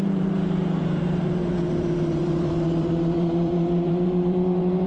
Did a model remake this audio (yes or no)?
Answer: yes